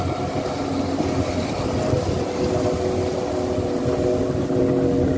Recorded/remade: recorded